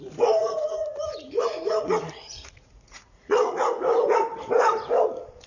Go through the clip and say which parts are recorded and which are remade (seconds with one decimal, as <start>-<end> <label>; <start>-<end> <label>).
0.0-0.4 recorded; 0.4-3.7 remade; 3.7-5.5 recorded